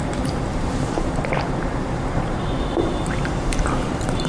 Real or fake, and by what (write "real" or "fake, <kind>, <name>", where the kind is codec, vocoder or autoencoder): fake, vocoder, BigVGAN v2